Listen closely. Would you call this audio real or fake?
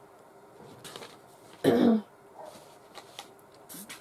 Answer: real